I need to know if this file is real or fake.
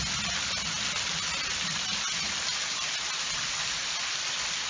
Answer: real